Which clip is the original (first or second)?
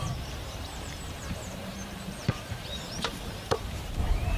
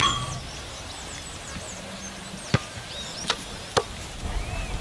second